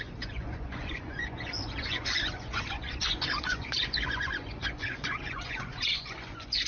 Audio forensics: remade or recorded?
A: remade